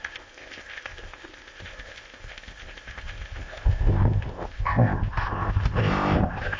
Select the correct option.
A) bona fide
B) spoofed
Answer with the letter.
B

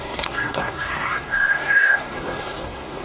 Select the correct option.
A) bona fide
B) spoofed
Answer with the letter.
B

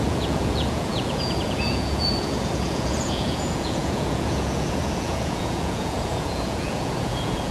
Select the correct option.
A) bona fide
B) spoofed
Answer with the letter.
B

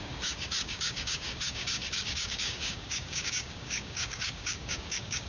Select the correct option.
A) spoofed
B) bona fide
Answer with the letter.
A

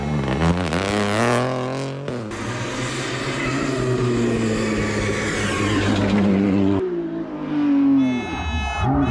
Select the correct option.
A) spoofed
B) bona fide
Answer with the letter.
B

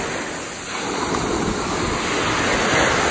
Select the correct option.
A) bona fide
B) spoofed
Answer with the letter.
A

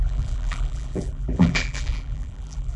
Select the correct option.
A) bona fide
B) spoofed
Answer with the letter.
B